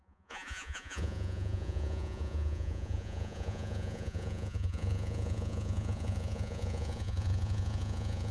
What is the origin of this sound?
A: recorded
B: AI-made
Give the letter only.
B